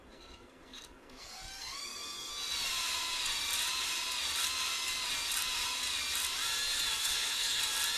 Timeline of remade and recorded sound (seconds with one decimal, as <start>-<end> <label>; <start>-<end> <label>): 0.0-2.3 remade; 2.3-7.0 recorded; 7.0-7.6 remade; 7.6-8.0 recorded